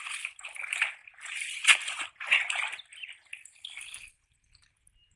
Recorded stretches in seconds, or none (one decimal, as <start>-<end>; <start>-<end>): 0.0-5.2